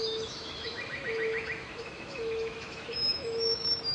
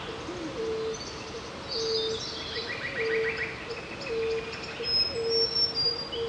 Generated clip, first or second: first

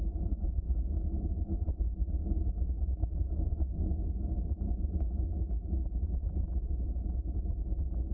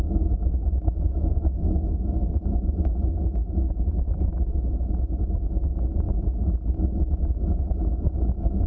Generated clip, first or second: second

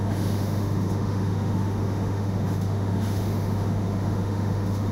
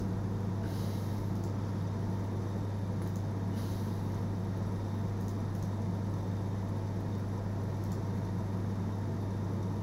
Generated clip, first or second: first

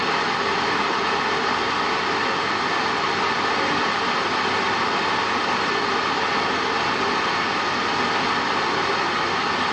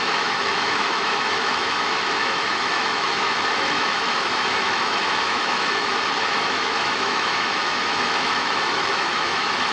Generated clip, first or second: second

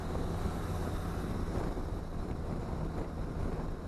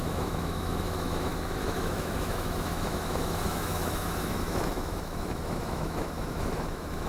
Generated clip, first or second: second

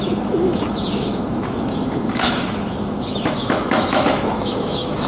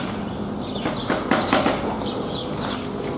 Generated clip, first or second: first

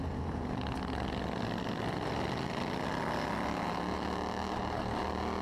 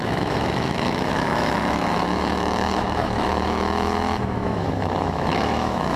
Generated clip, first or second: second